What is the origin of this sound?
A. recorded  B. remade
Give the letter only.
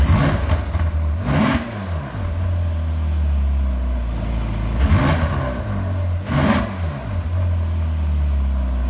A